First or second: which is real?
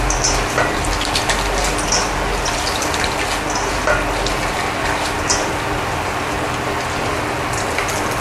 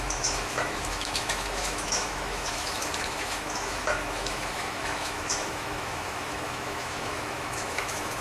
first